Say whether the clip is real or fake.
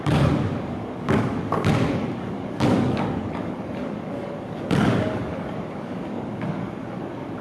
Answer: fake